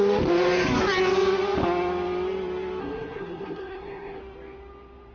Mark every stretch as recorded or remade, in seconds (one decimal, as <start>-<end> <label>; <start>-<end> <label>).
0.0-2.8 recorded; 2.8-4.2 remade; 4.2-5.1 recorded